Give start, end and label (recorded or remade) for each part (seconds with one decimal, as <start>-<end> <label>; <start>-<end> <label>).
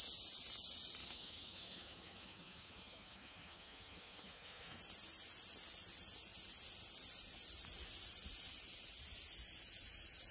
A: 0.0-1.0 recorded; 1.0-4.8 remade; 4.8-10.3 recorded